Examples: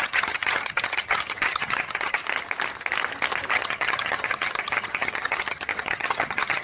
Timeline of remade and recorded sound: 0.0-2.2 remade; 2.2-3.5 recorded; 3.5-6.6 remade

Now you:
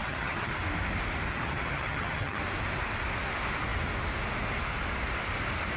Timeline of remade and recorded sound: 0.0-0.5 remade; 0.5-1.3 recorded; 1.3-2.4 remade; 2.4-5.8 recorded

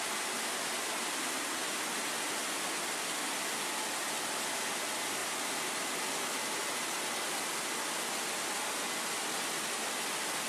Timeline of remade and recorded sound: 0.0-10.5 recorded

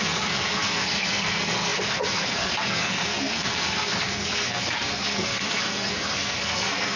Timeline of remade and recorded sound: 0.0-7.0 remade